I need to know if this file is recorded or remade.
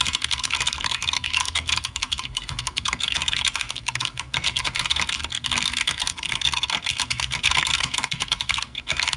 remade